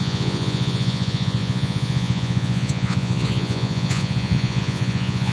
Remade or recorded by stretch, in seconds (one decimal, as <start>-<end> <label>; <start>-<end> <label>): 0.0-5.3 remade